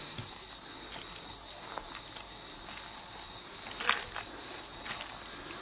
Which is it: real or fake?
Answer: real